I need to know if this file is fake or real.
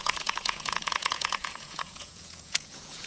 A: fake